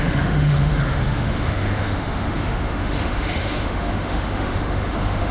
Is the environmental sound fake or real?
fake